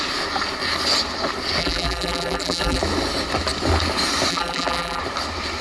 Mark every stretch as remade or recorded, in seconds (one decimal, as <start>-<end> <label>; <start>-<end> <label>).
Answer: 0.0-1.6 recorded; 1.6-2.8 remade; 2.8-4.3 recorded; 4.3-5.0 remade; 5.0-5.6 recorded